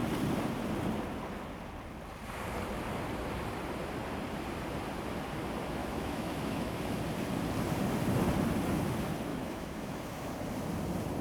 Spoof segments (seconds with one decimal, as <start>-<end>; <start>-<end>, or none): 5.8-7.0; 9.3-10.3